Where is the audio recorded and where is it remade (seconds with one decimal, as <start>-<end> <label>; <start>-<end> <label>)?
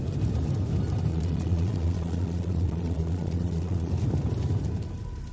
0.0-1.1 recorded; 1.1-3.9 remade; 3.9-5.3 recorded